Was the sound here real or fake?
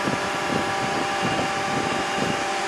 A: fake